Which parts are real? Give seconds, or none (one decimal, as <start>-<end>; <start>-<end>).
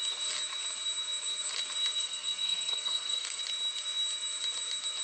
0.0-2.0; 3.4-5.0